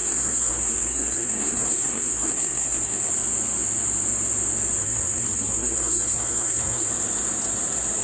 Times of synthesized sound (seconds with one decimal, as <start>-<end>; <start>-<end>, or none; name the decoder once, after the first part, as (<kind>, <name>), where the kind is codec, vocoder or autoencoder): 0.0-3.1 (codec, SNAC); 4.8-6.9